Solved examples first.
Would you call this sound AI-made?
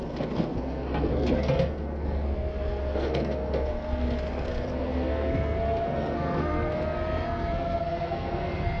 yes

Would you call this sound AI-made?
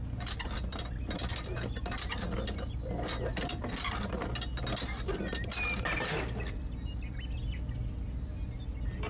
no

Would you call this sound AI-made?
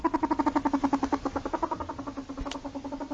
no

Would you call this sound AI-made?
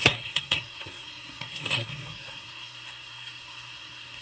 yes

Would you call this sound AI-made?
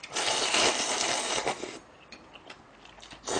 no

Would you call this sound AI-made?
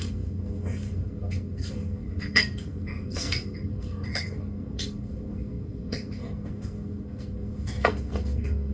yes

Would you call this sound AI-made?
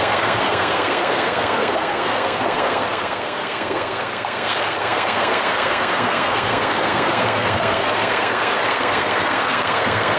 yes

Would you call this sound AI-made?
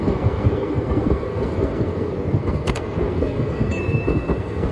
yes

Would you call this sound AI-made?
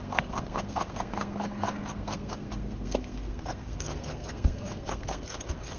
yes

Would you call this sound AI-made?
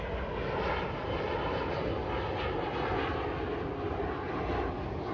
no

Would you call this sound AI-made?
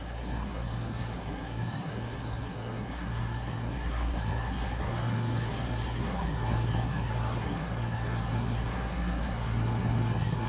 yes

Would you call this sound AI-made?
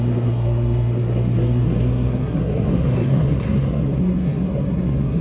yes